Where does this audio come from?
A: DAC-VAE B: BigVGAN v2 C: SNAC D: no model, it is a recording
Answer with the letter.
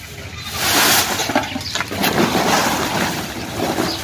D